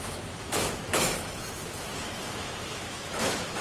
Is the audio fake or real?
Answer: fake